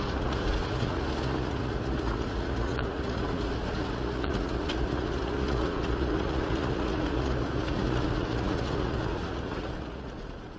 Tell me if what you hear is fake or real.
fake